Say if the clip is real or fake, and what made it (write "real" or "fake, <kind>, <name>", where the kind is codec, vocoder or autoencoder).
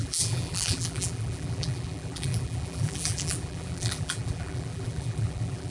fake, vocoder, BigVGAN v2